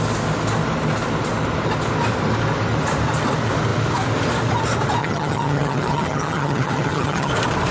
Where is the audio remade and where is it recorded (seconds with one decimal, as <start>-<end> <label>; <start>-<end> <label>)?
0.0-5.0 recorded; 5.0-7.3 remade; 7.3-7.7 recorded